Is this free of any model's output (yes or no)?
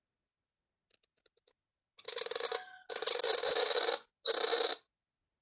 yes